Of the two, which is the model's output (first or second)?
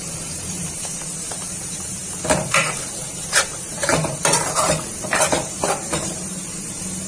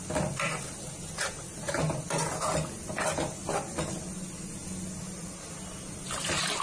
first